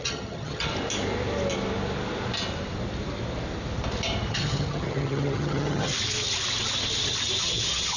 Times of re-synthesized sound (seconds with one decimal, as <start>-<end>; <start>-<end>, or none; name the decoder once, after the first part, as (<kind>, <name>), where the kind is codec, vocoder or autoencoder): 0.0-0.7 (vocoder, HiFi-GAN); 4.3-5.9; 7.4-8.0